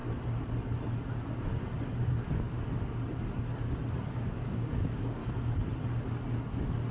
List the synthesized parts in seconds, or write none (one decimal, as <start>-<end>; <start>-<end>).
4.1-5.2